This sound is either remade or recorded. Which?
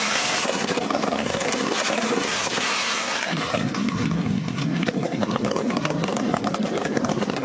remade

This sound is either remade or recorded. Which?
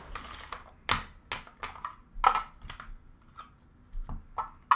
recorded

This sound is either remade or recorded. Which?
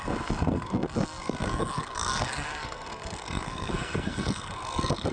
remade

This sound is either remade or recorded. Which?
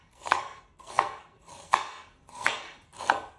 remade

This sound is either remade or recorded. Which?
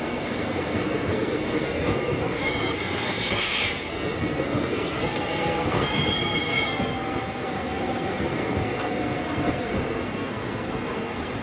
remade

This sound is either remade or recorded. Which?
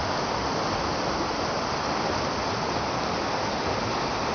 recorded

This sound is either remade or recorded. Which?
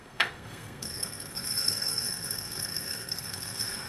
remade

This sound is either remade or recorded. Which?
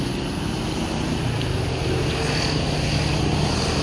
recorded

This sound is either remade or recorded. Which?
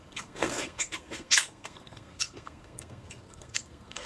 remade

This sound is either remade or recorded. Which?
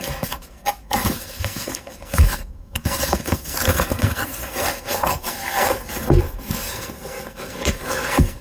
remade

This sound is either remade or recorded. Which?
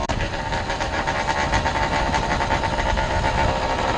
recorded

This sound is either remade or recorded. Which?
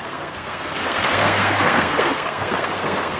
remade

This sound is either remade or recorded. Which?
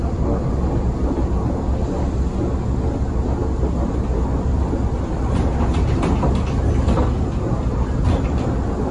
recorded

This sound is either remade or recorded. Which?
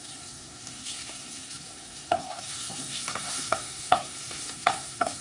remade